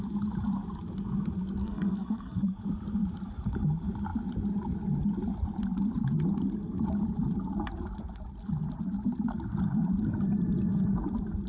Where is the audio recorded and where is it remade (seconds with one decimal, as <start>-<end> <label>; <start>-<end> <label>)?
0.0-1.6 recorded; 1.6-2.4 remade; 2.4-11.5 recorded